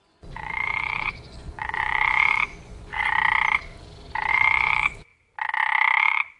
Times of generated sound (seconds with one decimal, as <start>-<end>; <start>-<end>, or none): 0.0-2.9; 4.3-5.1; 6.0-6.4